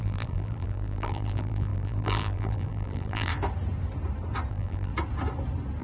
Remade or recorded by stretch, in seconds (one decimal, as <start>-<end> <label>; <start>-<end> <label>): 0.0-3.3 remade; 3.3-4.5 recorded; 4.5-4.9 remade; 4.9-5.8 recorded